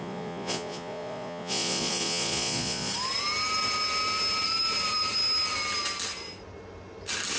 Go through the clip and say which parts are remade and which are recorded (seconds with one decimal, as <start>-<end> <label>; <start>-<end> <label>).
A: 0.0-2.9 remade; 2.9-7.4 recorded